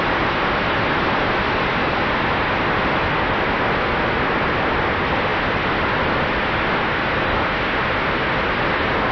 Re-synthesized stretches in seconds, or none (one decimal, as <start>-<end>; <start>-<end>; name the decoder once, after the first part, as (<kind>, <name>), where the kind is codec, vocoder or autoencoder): none